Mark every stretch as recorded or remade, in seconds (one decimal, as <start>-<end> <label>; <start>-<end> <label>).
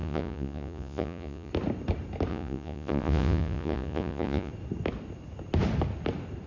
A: 0.0-1.5 remade; 1.5-2.3 recorded; 2.3-4.5 remade; 4.5-6.5 recorded